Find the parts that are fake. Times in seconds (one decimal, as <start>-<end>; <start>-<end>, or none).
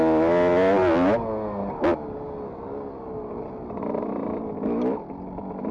none